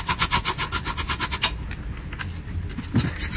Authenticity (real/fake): real